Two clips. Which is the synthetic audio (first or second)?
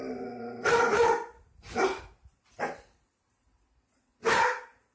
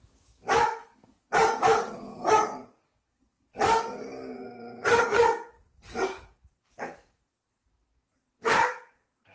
second